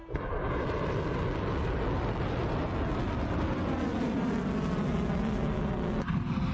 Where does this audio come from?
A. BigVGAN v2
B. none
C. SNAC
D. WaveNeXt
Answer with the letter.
B